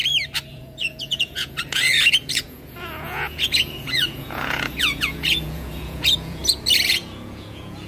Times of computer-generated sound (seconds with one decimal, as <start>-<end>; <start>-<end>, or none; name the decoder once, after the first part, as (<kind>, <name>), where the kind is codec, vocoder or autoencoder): 0.5-6.4 (vocoder, Vocos); 6.9-7.9